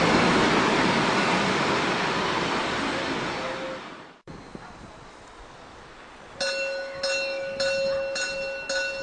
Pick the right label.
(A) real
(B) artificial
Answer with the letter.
A